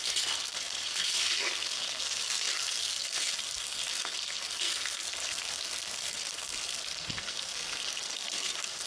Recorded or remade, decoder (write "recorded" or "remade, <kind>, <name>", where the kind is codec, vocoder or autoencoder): remade, codec, SNAC